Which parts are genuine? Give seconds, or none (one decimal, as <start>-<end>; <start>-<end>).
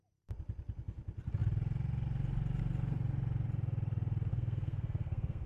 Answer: 0.0-4.3